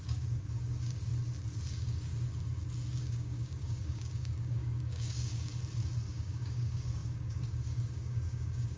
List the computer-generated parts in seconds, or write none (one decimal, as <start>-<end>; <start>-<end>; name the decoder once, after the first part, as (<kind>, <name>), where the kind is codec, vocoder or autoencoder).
0.0-1.1 (codec, DAC); 1.7-2.1; 3.0-5.5; 6.1-8.8